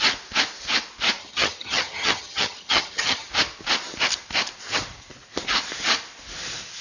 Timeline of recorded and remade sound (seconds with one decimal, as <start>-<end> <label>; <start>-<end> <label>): 0.0-1.2 recorded; 1.2-3.3 remade; 3.3-6.8 recorded